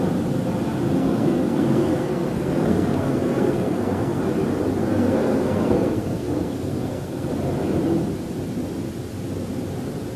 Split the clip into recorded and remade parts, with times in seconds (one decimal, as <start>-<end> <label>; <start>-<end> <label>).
0.0-1.0 recorded; 1.0-4.2 remade; 4.2-4.8 recorded; 4.8-7.3 remade; 7.3-10.2 recorded